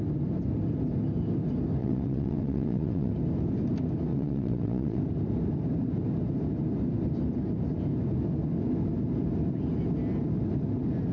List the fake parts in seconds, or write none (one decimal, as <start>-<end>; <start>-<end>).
1.8-3.1; 4.1-5.0